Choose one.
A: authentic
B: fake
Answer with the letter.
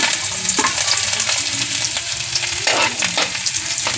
B